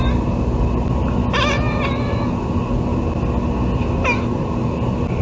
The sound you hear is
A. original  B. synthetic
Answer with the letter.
A